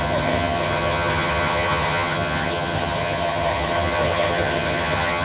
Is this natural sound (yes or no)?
no